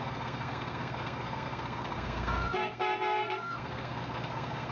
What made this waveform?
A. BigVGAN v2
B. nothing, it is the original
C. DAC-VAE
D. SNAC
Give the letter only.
D